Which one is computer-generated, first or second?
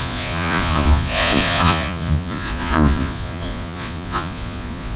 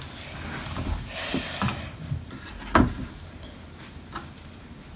first